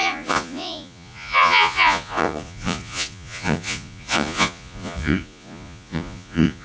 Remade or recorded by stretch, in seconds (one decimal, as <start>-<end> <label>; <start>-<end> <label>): 0.0-6.6 remade